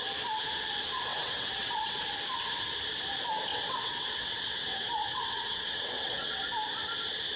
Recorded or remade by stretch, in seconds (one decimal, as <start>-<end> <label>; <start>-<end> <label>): 0.0-1.1 recorded; 1.1-2.0 remade; 2.0-3.5 recorded; 3.5-6.4 remade; 6.4-7.4 recorded